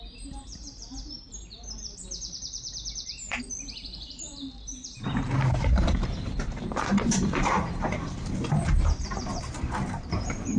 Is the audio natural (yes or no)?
no